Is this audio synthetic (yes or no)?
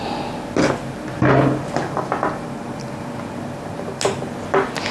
no